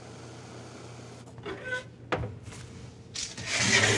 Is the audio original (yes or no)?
yes